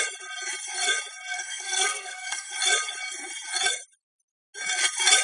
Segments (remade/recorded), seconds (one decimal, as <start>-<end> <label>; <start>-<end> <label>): 0.0-1.3 recorded; 1.3-2.5 remade; 2.5-5.2 recorded